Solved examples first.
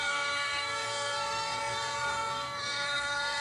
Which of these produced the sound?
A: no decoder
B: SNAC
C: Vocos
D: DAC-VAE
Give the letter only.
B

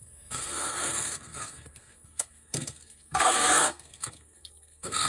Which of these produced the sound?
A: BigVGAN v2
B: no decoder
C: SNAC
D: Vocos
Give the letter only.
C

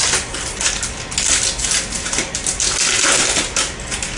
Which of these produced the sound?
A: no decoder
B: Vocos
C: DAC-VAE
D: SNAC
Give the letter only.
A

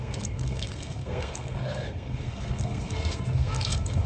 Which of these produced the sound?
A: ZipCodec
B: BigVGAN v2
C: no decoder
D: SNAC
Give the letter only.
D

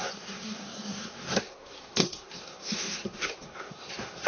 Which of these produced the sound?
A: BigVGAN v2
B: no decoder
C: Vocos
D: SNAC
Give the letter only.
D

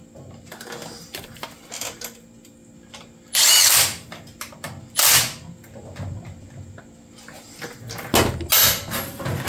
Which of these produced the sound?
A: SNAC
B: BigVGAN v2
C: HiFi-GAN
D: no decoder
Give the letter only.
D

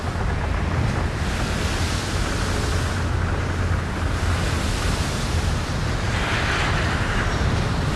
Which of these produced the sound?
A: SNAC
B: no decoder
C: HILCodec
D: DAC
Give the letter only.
B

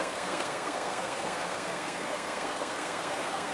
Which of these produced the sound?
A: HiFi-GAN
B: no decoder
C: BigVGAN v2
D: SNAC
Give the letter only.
D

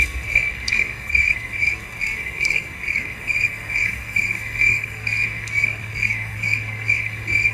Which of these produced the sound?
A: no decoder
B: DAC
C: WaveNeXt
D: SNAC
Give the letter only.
D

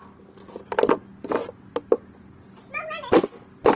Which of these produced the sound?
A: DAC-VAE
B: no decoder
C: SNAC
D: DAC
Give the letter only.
B